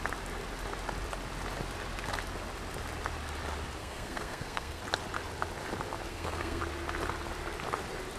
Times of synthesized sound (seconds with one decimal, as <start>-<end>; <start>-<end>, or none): 3.8-4.8; 6.1-6.6